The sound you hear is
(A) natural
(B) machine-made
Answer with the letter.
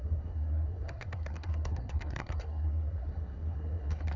B